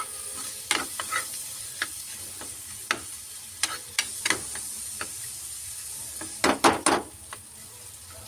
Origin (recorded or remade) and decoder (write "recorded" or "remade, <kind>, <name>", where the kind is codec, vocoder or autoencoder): recorded